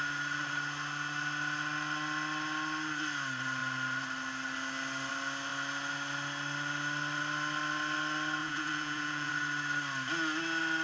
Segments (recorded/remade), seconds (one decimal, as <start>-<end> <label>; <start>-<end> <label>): 0.0-8.4 recorded; 8.4-9.3 remade; 9.3-10.8 recorded